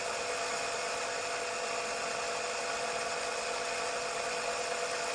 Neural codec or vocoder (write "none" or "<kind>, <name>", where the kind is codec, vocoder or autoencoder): none